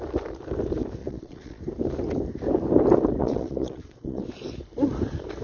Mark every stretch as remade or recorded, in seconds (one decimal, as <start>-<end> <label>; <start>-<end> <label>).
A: 0.0-1.0 recorded; 1.0-1.6 remade; 1.6-3.2 recorded; 3.2-4.2 remade; 4.2-5.4 recorded

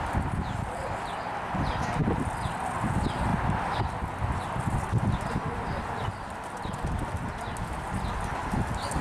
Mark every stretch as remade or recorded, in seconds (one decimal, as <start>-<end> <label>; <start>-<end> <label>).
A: 0.0-9.0 recorded

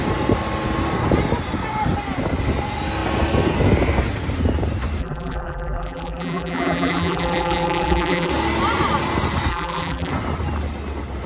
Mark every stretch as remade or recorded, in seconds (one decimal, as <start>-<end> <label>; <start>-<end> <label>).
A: 0.0-5.0 recorded; 5.0-8.3 remade; 8.3-9.5 recorded; 9.5-10.1 remade; 10.1-11.3 recorded

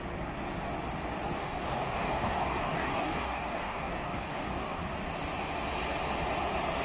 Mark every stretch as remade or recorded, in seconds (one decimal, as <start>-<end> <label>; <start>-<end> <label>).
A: 0.0-1.4 recorded; 1.4-4.8 remade; 4.8-6.8 recorded

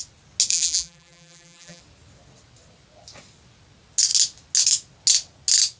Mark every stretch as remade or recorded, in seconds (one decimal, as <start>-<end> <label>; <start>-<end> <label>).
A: 0.0-0.5 recorded; 0.5-1.8 remade; 1.8-5.8 recorded